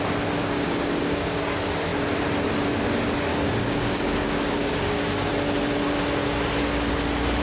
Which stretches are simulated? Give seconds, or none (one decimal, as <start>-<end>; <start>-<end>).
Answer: 0.4-1.5; 3.3-5.3